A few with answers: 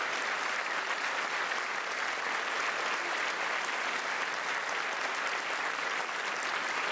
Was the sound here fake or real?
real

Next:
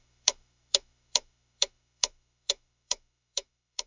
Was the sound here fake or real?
fake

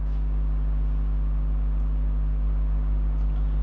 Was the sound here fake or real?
real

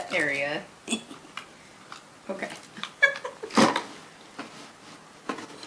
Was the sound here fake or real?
real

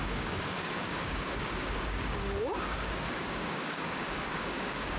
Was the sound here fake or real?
fake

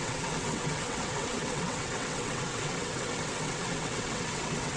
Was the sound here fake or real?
fake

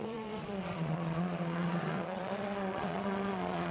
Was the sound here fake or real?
fake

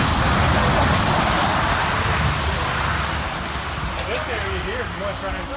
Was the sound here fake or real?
real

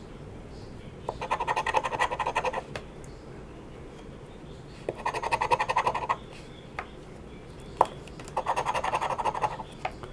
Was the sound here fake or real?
fake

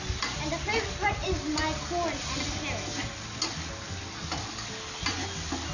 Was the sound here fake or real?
real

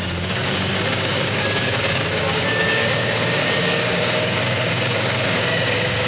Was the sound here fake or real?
fake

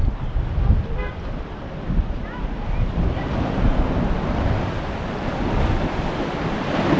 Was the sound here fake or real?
real